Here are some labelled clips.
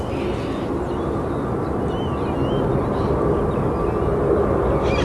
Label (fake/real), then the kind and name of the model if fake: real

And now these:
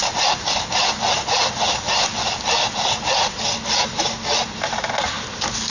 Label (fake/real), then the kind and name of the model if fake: real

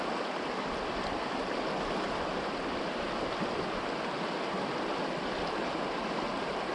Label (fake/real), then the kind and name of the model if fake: real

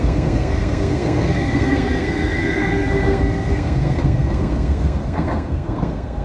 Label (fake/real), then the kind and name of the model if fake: fake, codec, SNAC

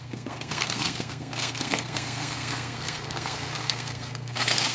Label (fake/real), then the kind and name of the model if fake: fake, codec, SNAC